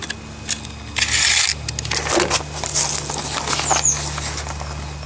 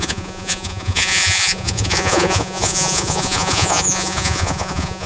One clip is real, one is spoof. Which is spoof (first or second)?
second